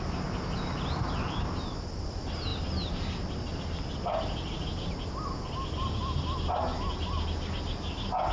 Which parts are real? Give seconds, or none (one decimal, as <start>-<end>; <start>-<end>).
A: 0.0-8.3